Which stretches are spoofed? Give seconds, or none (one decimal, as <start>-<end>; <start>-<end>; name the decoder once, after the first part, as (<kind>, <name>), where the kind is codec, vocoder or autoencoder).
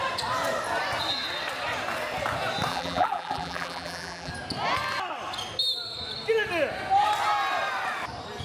2.7-4.3 (vocoder, BigVGAN v2)